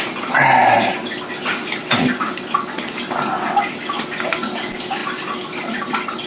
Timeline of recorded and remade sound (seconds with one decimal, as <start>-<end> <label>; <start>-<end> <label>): 0.0-6.3 recorded

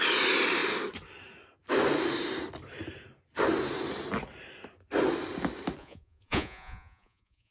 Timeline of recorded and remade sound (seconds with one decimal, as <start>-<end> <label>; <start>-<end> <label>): 0.0-5.8 recorded; 5.8-7.5 remade